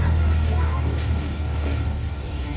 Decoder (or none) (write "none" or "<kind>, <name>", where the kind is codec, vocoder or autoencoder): codec, DAC